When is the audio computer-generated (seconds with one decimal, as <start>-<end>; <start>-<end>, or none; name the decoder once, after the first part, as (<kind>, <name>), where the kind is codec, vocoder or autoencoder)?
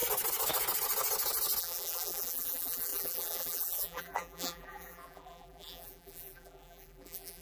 1.6-7.4 (vocoder, BigVGAN v2)